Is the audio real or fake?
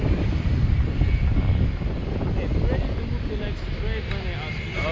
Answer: real